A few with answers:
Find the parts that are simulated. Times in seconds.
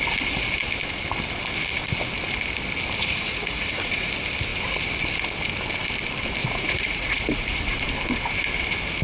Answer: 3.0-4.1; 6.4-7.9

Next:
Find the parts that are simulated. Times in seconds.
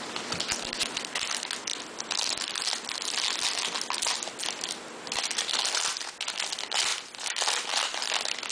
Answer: none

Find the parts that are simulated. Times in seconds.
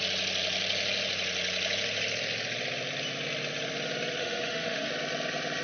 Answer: 4.2-4.9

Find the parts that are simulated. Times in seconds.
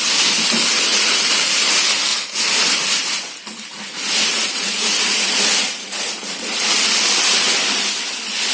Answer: 0.9-1.4; 2.1-2.7; 4.3-6.5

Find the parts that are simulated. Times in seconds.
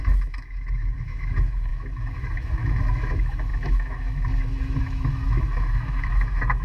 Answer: 0.0-6.6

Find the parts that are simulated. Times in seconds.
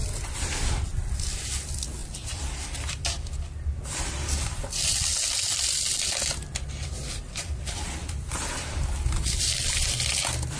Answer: none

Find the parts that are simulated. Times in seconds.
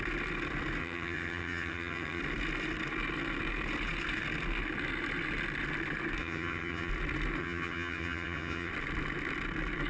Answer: 0.8-2.2; 6.2-6.9; 7.4-8.7